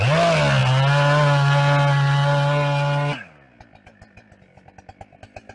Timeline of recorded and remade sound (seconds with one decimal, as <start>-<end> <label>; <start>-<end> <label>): 0.0-5.5 recorded